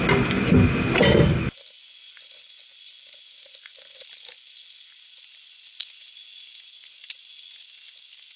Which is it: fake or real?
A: real